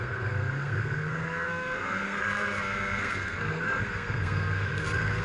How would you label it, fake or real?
fake